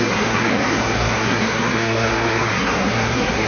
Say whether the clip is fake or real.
fake